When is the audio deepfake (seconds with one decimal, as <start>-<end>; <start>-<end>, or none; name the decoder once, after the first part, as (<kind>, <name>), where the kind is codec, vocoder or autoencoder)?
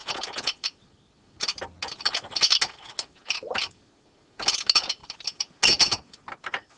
none